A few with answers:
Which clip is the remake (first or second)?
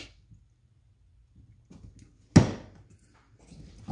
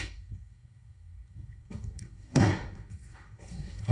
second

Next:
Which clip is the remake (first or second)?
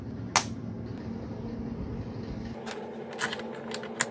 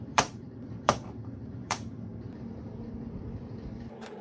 second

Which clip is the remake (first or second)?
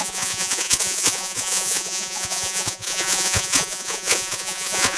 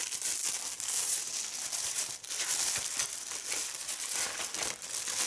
first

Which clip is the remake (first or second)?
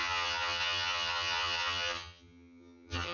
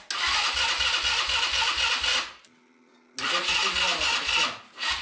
first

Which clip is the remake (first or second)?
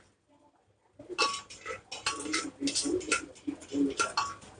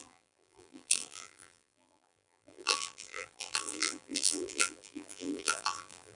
second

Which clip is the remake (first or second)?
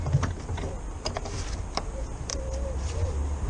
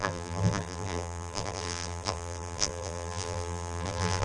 second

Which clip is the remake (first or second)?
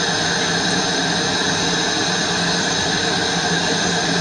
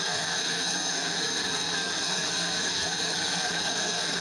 second